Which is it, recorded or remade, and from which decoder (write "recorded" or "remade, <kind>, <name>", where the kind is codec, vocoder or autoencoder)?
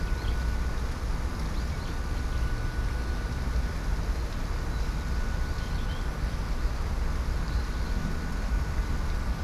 recorded